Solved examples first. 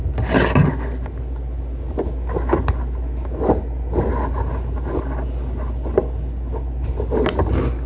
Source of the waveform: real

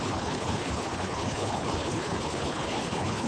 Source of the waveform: fake